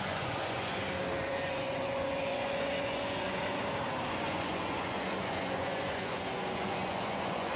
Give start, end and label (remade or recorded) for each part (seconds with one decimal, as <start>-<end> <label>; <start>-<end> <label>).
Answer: 0.0-0.7 remade; 0.7-1.2 recorded; 1.2-3.4 remade; 3.4-4.1 recorded; 4.1-7.6 remade